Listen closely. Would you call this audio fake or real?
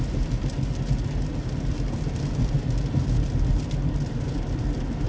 real